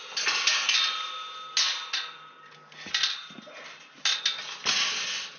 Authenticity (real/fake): real